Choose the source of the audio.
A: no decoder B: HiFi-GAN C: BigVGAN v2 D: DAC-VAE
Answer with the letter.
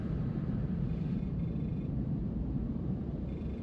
C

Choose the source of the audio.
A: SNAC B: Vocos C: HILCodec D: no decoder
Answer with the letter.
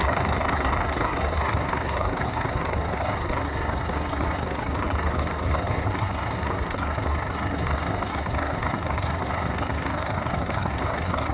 A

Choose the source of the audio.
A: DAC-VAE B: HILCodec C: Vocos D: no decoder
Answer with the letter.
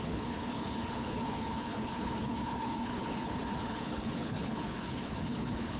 B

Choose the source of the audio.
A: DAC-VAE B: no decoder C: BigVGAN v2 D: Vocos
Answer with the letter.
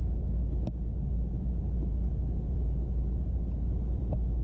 B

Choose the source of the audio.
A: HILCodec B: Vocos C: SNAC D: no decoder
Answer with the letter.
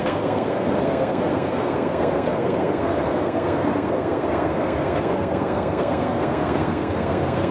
C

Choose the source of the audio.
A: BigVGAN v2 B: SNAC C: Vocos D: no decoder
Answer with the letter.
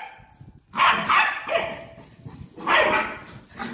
D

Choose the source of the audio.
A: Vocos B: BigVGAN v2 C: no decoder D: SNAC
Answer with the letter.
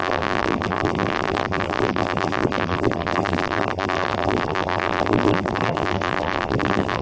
B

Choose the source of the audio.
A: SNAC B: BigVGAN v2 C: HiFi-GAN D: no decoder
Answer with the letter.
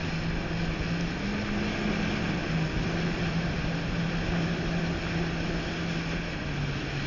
D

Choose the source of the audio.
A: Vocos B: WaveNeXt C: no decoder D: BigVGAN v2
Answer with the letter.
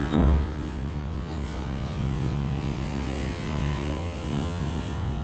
B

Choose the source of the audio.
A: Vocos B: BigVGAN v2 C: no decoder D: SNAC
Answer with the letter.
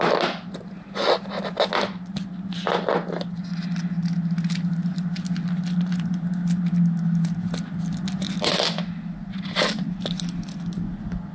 C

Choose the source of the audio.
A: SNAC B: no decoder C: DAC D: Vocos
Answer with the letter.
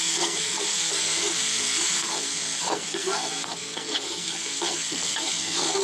A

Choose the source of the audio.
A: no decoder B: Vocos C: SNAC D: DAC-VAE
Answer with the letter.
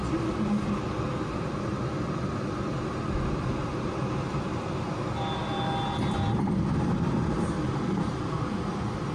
A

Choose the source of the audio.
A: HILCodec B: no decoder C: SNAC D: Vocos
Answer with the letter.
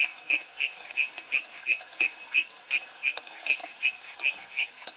C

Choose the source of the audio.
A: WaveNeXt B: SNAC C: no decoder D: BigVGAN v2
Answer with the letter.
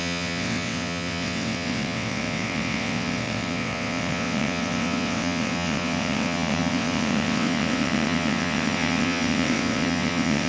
A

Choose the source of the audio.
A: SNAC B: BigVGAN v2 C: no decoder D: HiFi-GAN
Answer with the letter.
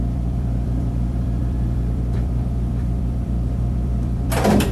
B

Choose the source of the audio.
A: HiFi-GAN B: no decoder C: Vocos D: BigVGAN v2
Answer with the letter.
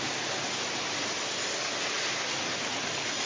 B